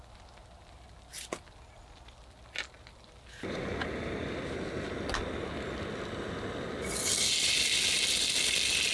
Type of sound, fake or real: real